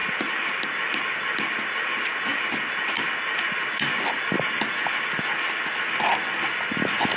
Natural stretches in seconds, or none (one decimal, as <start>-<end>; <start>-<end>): 0.0-7.2